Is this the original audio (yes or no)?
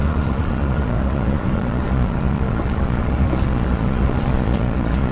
no